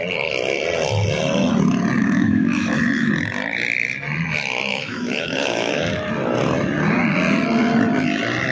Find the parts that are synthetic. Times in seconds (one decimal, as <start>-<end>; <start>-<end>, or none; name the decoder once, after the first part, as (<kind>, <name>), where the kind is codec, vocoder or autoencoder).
2.0-3.1 (autoencoder, DAC-VAE); 4.7-6.1